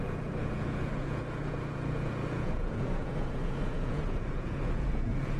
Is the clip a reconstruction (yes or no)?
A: yes